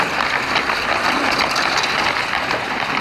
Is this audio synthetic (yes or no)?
no